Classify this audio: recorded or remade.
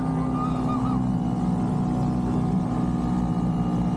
recorded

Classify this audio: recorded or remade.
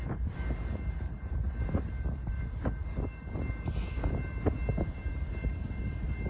recorded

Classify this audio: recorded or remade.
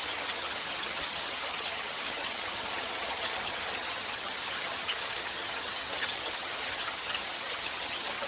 remade